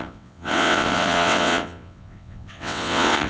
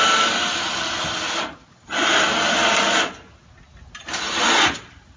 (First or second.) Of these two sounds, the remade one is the first